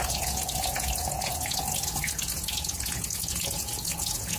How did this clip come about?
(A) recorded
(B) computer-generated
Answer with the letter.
B